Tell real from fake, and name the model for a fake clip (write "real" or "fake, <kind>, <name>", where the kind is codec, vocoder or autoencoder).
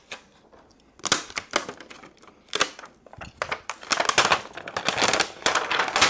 real